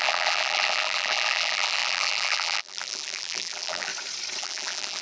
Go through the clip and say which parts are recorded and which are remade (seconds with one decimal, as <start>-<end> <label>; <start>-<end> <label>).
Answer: 0.0-3.9 remade; 3.9-4.4 recorded; 4.4-5.0 remade